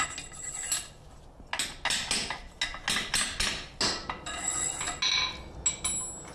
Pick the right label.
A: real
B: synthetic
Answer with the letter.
A